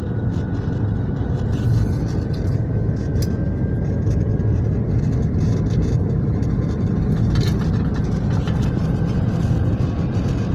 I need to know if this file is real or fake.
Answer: real